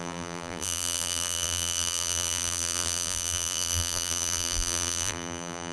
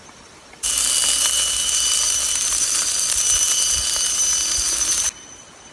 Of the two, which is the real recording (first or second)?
second